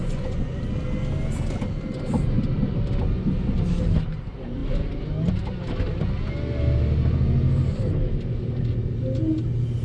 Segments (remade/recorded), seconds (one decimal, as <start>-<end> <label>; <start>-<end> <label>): 0.0-0.6 remade; 0.6-9.8 recorded

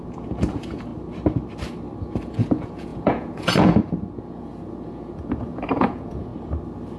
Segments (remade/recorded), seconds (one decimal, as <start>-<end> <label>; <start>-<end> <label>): 0.0-0.9 remade; 0.9-2.0 recorded; 2.0-6.3 remade; 6.3-7.0 recorded

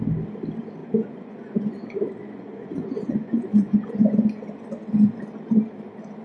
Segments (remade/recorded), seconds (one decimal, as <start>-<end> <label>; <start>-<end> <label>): 0.0-0.8 recorded; 0.8-1.7 remade; 1.7-2.2 recorded; 2.2-4.4 remade; 4.4-6.2 recorded

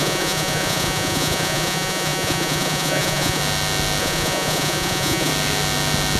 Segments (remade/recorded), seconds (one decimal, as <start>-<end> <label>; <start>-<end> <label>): 0.0-3.4 remade; 3.4-4.0 recorded; 4.0-5.3 remade; 5.3-6.2 recorded

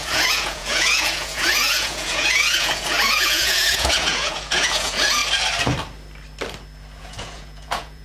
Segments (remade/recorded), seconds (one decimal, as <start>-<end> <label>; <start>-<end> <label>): 0.0-5.2 remade; 5.2-7.0 recorded; 7.0-8.0 remade

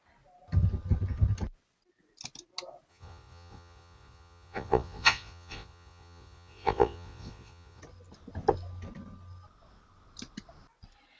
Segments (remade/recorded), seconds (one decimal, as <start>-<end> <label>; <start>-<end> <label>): 0.0-2.9 recorded; 2.9-7.8 remade; 7.8-11.2 recorded

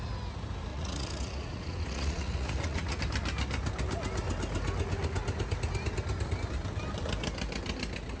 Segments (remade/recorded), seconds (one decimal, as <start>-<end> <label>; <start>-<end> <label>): 0.0-0.7 recorded; 0.7-3.0 remade; 3.0-8.2 recorded